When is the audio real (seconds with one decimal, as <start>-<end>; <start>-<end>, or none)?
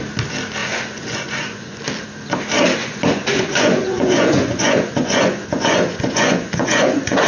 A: 0.0-0.6; 1.8-2.8